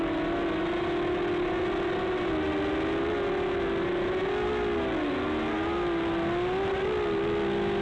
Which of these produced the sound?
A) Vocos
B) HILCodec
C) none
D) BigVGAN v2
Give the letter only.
C